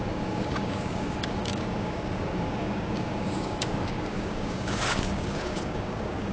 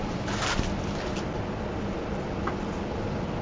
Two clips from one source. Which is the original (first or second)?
second